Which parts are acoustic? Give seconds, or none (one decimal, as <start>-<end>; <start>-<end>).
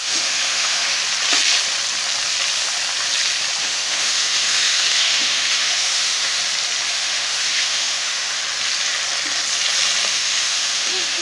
1.0-3.6; 6.4-6.9; 8.4-10.1